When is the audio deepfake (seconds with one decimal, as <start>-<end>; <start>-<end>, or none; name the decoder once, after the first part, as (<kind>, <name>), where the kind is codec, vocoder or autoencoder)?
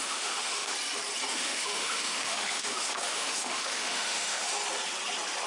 0.0-0.7 (autoencoder, DAC-VAE); 1.3-4.5